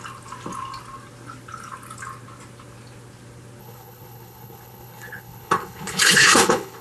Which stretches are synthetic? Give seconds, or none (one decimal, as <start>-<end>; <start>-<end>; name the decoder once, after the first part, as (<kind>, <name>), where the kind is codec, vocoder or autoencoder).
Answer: 3.6-6.8 (codec, HILCodec)